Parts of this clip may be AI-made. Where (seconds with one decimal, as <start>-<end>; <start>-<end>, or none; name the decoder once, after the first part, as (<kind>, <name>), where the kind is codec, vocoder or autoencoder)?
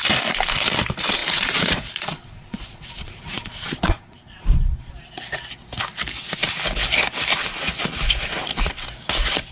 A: 1.2-4.9 (vocoder, Vocos)